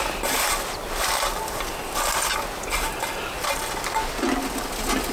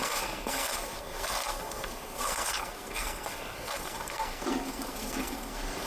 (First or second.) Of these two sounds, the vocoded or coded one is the second